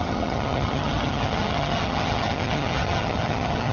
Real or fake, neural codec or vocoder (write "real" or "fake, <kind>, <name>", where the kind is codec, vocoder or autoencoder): fake, vocoder, HiFi-GAN